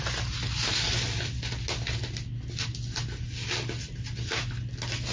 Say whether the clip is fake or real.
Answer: real